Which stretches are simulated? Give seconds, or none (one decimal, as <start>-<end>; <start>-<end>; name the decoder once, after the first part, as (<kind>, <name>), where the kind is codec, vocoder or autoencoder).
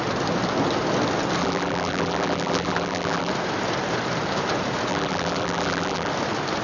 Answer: 1.4-3.3 (vocoder, BigVGAN v2); 4.9-6.1